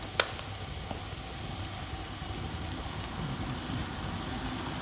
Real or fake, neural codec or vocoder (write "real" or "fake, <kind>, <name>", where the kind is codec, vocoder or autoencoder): real